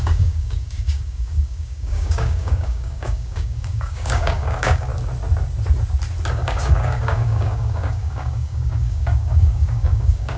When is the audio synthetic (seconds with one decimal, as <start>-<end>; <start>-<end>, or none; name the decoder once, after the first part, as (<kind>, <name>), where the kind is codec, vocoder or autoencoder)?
0.0-4.9 (codec, DAC); 6.3-10.4